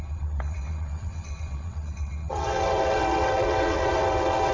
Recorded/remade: remade